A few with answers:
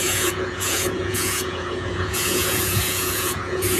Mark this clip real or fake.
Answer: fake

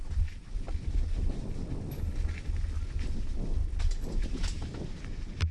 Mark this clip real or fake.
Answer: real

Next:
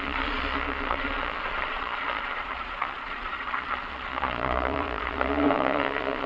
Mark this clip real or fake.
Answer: fake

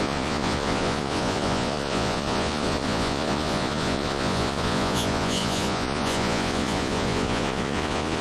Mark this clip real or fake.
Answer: fake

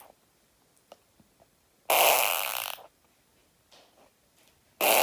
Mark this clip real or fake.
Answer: real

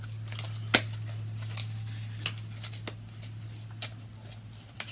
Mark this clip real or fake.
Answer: real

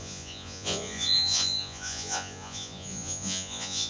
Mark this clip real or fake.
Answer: fake